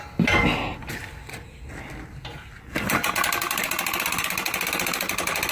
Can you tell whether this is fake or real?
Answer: real